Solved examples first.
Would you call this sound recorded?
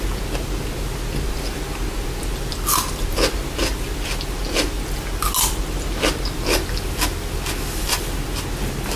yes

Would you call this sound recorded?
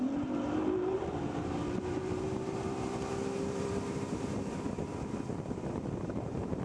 no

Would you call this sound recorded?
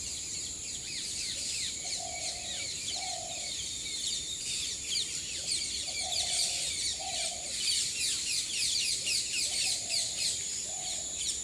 no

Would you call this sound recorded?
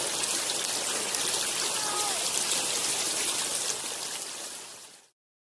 yes